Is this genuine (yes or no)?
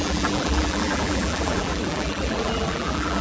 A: no